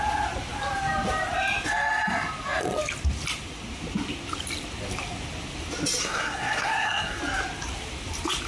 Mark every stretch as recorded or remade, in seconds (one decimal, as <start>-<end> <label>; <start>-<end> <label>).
0.0-6.0 recorded; 6.0-7.2 remade; 7.2-8.5 recorded